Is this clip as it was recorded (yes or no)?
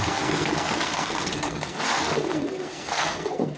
no